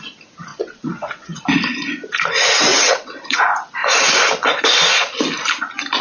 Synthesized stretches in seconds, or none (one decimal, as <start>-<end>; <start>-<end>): 0.5-1.4; 2.7-3.4